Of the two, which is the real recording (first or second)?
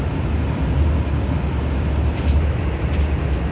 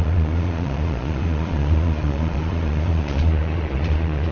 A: first